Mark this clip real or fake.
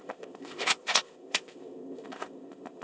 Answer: fake